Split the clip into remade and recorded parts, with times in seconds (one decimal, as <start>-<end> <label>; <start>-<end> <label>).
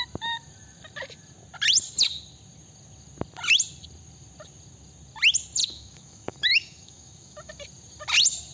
0.0-5.6 recorded; 5.6-7.5 remade; 7.5-8.5 recorded